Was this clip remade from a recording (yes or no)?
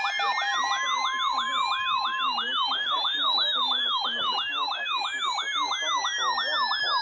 no